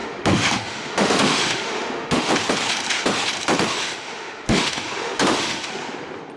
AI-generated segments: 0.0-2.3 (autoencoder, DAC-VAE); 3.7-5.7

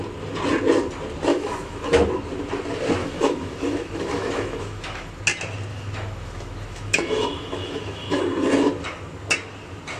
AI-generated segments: 1.3-2.1 (autoencoder, DAC-VAE); 3.0-5.2; 5.7-8.2

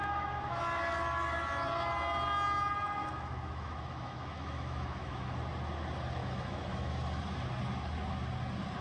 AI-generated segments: 0.0-0.6 (autoencoder, DAC-VAE); 3.0-5.4; 6.2-6.9

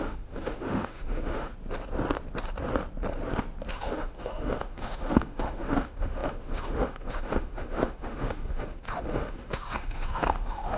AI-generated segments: 0.0-1.5 (autoencoder, DAC-VAE); 3.7-10.8

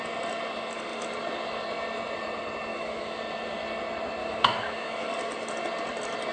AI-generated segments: 2.7-3.2 (autoencoder, DAC-VAE); 4.2-5.1

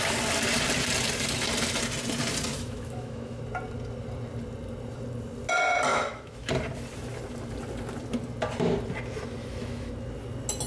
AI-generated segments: 2.5-3.4 (autoencoder, DAC-VAE); 5.9-6.5; 9.4-9.9